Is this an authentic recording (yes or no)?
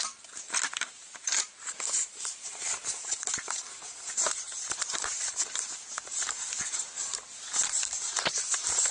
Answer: no